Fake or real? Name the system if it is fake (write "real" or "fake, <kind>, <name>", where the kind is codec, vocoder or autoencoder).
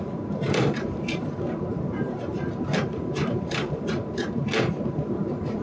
fake, vocoder, BigVGAN v2